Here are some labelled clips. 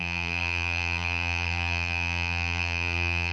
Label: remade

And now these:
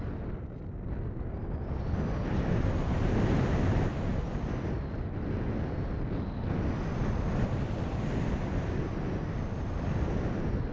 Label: recorded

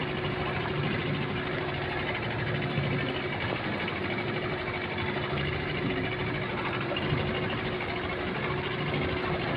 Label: recorded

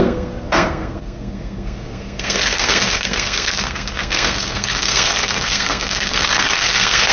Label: remade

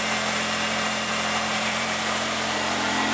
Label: remade